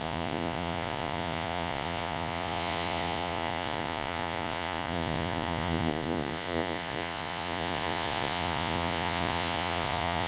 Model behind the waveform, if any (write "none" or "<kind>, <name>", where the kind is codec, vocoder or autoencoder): vocoder, Vocos